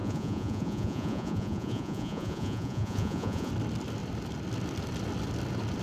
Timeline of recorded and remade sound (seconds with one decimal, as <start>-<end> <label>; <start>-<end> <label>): 0.0-3.5 remade; 3.5-5.8 recorded